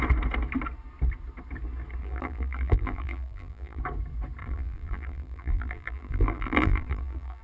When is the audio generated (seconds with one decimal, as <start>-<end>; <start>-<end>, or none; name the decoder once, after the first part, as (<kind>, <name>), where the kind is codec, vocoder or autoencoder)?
2.0-3.8 (vocoder, BigVGAN v2); 4.4-7.4